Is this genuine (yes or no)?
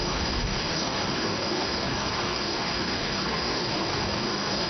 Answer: no